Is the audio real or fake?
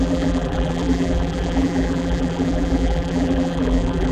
fake